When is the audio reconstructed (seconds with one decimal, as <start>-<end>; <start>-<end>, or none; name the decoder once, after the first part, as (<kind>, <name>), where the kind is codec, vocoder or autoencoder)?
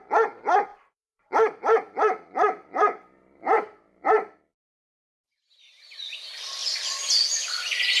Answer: 0.7-5.5 (vocoder, BigVGAN v2); 6.6-7.6